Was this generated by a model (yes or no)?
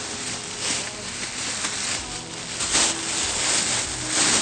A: no